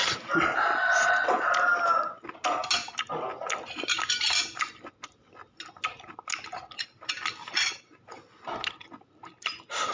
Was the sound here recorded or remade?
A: recorded